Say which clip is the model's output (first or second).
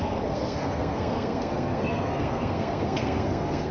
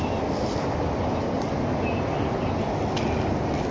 first